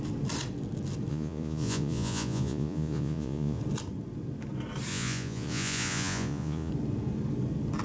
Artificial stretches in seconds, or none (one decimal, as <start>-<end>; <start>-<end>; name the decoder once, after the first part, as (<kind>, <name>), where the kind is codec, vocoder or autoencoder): 1.1-3.6 (vocoder, Vocos); 4.9-6.7